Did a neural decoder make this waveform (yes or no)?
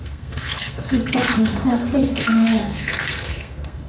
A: yes